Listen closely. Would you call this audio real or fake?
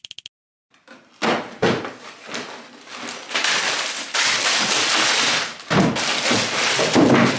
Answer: real